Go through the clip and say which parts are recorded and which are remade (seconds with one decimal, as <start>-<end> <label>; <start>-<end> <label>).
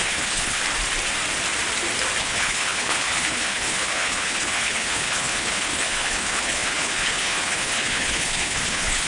0.0-0.6 remade; 0.6-2.2 recorded; 2.2-9.1 remade